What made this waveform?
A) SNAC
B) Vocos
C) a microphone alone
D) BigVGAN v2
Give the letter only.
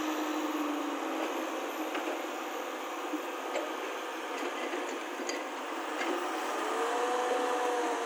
C